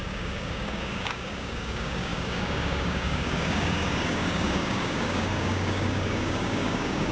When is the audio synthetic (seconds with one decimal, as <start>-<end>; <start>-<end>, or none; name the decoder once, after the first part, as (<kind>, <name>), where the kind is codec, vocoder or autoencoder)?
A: 0.0-7.1 (codec, DAC)